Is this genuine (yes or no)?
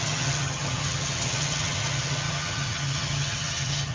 no